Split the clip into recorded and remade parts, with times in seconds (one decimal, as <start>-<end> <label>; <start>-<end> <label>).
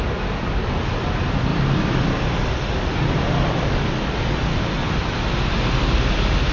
0.0-1.5 recorded; 1.5-2.0 remade; 2.0-2.4 recorded; 2.4-5.1 remade; 5.1-6.5 recorded